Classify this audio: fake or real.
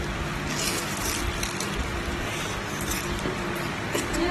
real